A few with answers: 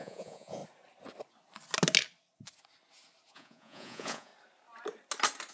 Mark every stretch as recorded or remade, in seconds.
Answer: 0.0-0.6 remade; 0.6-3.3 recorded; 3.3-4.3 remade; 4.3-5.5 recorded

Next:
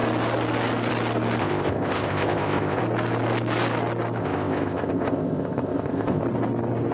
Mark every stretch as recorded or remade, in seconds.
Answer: 0.0-1.4 recorded; 1.4-2.8 remade; 2.8-4.2 recorded; 4.2-6.2 remade; 6.2-6.9 recorded